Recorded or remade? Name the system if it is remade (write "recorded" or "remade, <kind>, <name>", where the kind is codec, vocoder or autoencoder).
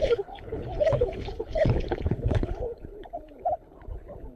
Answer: remade, codec, HILCodec